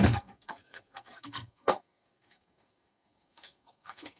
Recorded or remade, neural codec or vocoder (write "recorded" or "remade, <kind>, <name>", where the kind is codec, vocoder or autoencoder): remade, codec, SNAC